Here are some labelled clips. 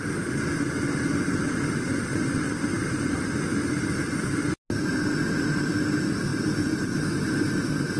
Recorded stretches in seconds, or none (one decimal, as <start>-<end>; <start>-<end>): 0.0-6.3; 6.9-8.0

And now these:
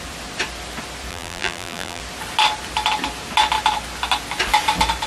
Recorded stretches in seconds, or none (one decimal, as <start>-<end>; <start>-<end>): 0.0-1.1; 2.0-5.1

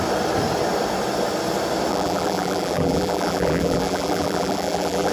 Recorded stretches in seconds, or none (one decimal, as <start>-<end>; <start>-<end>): 0.0-1.9

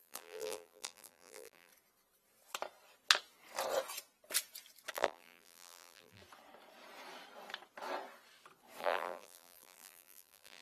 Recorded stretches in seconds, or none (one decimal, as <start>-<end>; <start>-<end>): 1.7-4.9; 6.2-8.8

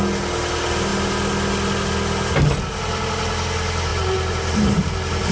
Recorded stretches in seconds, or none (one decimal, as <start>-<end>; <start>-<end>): 0.0-3.9

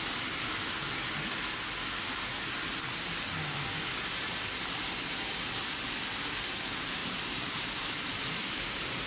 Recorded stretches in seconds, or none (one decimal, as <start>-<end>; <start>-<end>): 0.0-7.0

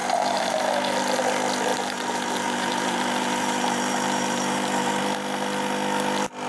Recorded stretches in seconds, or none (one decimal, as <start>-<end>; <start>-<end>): 0.6-1.7; 5.0-6.5

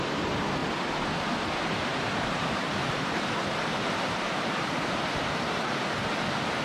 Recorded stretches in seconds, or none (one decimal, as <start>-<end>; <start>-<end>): 0.0-1.9; 5.8-6.6